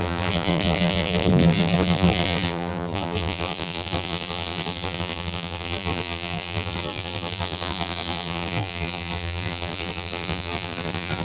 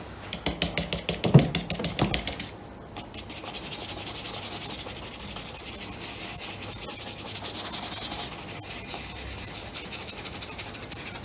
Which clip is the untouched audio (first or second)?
second